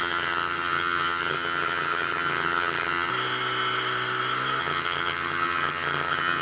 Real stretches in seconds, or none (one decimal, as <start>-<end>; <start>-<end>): 3.1-4.6